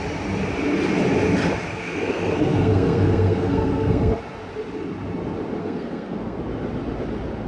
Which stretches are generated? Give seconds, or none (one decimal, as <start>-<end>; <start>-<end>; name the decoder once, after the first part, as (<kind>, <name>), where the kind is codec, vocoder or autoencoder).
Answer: 1.7-4.2 (codec, SNAC); 5.6-6.4